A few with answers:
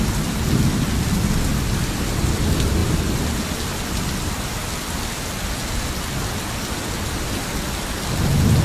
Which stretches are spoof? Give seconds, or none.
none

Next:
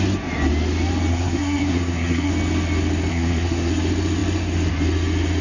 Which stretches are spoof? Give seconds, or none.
1.1-2.3 (codec, SNAC); 3.1-3.7

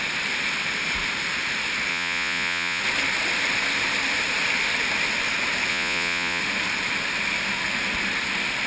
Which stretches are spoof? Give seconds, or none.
1.9-2.8 (vocoder, Vocos); 5.7-6.4

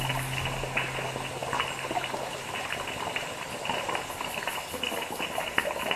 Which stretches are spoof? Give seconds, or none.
none

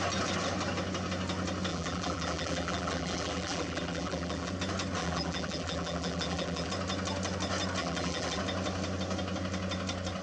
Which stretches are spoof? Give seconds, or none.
1.7-4.5 (vocoder, BigVGAN v2); 5.0-6.7; 7.8-8.4

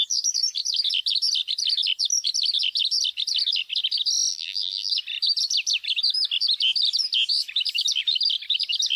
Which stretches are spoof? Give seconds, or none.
4.3-4.9 (vocoder, BigVGAN v2)